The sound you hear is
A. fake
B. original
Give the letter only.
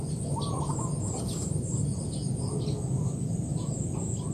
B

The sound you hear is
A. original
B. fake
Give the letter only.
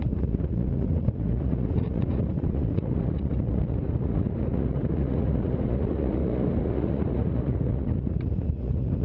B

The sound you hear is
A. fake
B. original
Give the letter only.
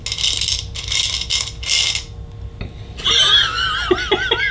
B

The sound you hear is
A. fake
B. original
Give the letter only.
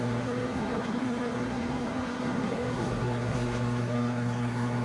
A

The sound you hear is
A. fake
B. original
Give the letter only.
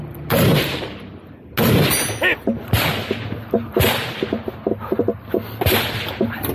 B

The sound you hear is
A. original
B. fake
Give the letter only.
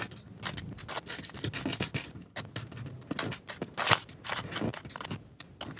A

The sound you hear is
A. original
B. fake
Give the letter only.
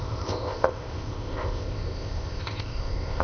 B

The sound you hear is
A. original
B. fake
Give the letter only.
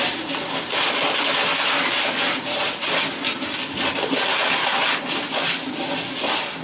A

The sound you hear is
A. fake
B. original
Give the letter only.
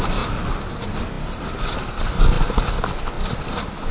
B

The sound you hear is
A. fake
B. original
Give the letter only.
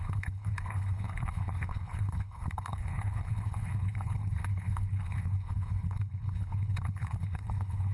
A